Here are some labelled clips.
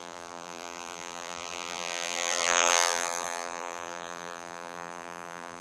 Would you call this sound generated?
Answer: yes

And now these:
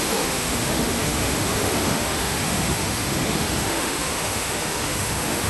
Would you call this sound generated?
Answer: yes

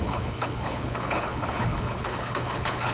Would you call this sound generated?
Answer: yes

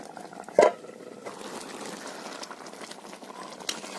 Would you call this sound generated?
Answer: no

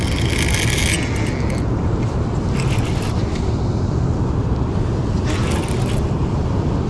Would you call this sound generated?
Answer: no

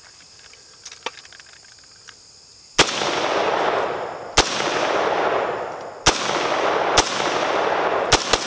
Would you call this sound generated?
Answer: no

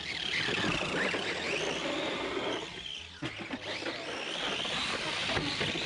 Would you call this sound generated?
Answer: no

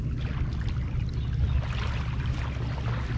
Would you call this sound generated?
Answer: no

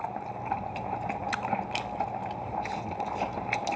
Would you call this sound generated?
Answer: no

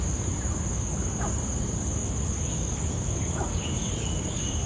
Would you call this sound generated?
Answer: yes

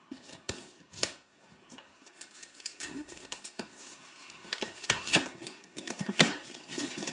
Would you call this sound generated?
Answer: yes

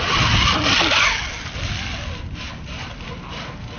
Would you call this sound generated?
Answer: no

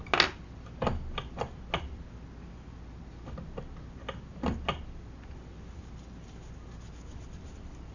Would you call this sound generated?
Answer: no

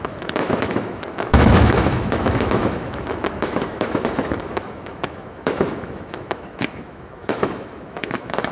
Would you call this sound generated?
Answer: yes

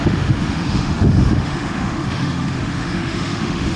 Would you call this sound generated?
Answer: yes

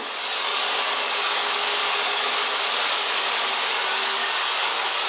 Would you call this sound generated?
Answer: yes